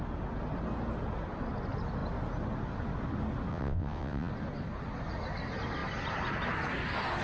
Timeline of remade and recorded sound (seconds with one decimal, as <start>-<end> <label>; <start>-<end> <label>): 0.0-3.5 recorded; 3.5-4.3 remade; 4.3-7.2 recorded